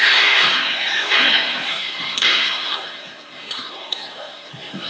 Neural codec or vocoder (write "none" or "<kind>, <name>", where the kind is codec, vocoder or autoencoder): codec, SNAC